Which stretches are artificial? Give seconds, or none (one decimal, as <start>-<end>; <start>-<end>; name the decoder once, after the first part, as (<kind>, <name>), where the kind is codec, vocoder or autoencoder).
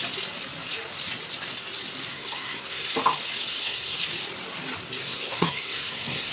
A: 2.1-2.9 (codec, SNAC); 3.5-4.0; 5.0-6.3